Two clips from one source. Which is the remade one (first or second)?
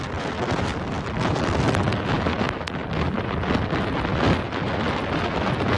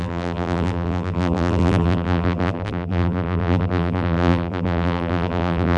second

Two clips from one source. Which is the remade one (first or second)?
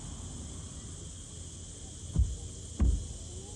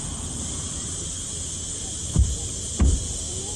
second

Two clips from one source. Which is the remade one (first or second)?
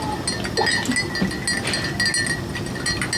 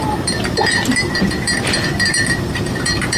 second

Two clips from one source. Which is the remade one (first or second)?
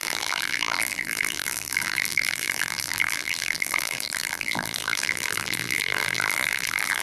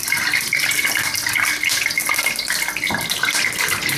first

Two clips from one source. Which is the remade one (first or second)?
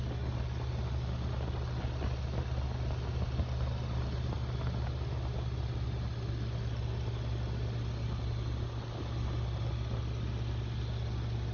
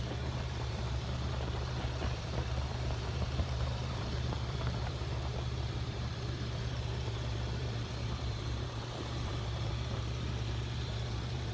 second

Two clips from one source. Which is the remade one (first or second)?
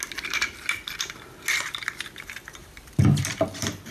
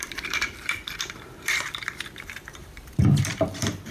second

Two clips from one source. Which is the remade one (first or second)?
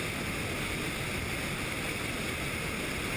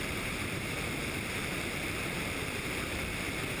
second